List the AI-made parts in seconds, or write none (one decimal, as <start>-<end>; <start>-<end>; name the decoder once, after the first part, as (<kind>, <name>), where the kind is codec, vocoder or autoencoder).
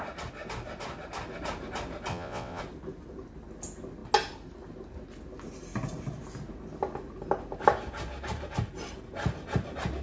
2.1-2.6 (vocoder, WaveNeXt)